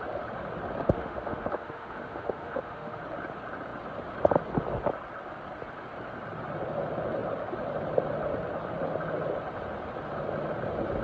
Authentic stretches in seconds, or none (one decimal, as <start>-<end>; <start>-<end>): 0.0-0.8; 3.0-11.0